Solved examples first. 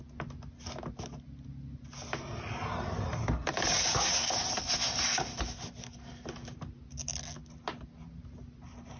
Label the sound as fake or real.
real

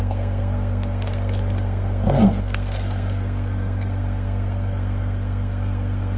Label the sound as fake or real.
fake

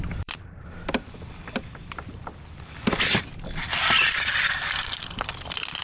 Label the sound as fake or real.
fake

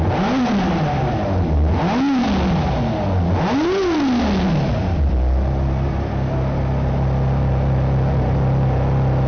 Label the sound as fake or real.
real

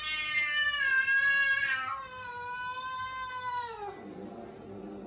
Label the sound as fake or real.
real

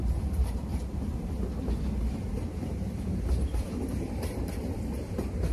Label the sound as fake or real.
fake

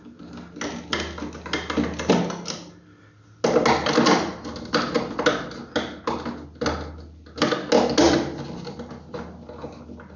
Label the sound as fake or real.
real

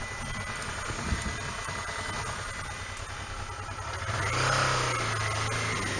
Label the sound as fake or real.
real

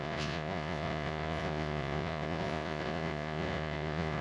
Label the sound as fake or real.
fake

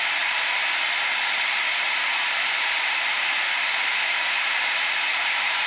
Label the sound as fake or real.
fake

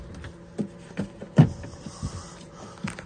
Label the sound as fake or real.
real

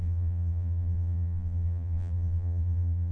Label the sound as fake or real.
fake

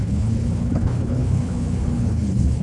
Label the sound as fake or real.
fake